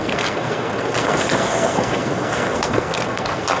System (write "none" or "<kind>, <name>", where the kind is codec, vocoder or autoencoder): codec, SNAC